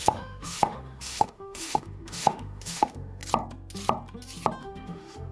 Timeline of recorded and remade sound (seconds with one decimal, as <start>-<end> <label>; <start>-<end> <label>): 0.0-3.2 remade; 3.2-4.6 recorded; 4.6-5.3 remade